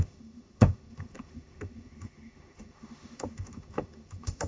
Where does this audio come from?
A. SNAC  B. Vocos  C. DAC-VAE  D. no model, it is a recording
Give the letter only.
C